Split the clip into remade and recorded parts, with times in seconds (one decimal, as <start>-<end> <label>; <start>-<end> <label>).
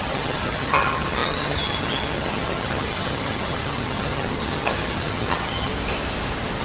0.0-5.7 remade; 5.7-6.6 recorded